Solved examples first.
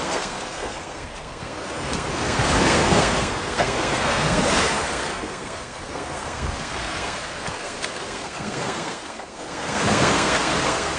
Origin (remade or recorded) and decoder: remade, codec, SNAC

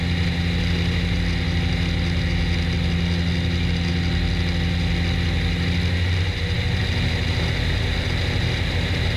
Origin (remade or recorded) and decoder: recorded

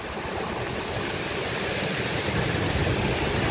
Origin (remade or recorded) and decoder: recorded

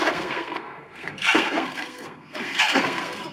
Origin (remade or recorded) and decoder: remade, codec, SNAC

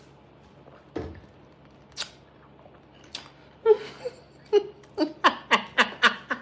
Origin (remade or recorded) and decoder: recorded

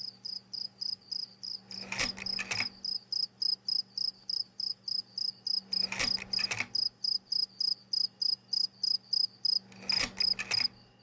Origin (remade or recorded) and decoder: recorded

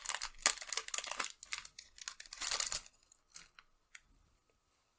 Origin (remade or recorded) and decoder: recorded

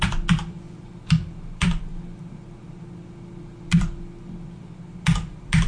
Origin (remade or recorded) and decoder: recorded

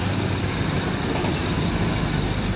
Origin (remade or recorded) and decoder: recorded